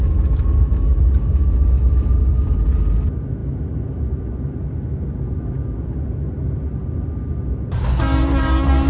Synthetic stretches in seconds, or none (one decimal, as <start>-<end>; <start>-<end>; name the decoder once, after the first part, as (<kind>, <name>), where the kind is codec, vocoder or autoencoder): none